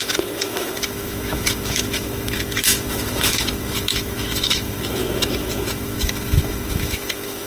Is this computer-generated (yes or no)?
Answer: yes